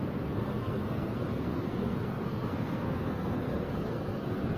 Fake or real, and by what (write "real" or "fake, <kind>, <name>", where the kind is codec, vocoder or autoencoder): fake, codec, SNAC